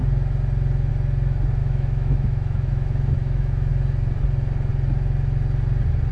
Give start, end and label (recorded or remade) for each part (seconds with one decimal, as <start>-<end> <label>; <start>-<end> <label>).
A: 0.0-1.6 recorded; 1.6-3.7 remade; 3.7-6.1 recorded